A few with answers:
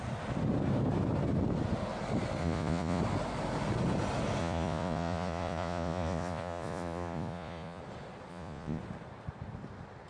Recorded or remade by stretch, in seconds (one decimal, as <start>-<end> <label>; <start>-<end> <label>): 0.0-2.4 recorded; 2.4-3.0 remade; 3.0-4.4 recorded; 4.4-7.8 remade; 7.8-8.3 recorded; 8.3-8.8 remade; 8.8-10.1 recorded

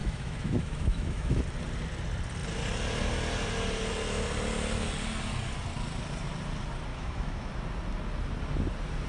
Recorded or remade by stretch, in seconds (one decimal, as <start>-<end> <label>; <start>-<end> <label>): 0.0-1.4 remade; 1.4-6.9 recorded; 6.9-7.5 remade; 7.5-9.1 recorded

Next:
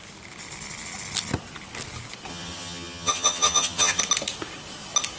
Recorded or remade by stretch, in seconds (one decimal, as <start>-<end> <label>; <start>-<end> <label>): 0.0-2.3 recorded; 2.3-4.0 remade; 4.0-5.2 recorded

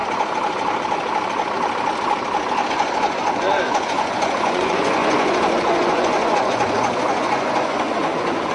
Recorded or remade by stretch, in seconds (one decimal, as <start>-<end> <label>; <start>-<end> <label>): 0.0-2.7 recorded; 2.7-8.5 remade